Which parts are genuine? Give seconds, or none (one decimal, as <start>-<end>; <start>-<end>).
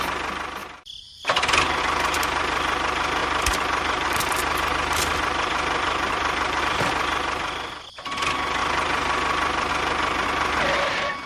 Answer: 0.0-0.6; 1.8-3.2; 6.9-8.6; 9.7-11.3